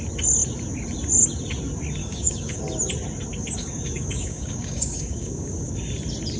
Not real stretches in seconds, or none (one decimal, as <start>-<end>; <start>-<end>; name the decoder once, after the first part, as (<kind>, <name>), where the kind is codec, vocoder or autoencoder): 2.0-2.6 (codec, DAC); 3.6-5.7